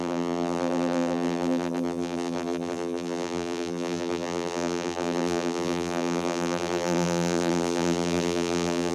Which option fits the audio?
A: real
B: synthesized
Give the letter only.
B